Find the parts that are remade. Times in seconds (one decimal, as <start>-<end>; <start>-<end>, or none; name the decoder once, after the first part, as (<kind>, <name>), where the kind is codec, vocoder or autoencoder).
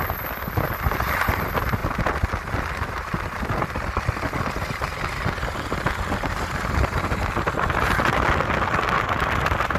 none